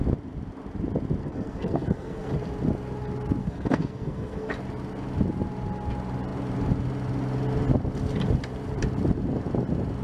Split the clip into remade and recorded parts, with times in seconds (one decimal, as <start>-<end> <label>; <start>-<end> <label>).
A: 0.0-1.2 recorded; 1.2-2.3 remade; 2.3-3.4 recorded; 3.4-4.5 remade; 4.5-10.0 recorded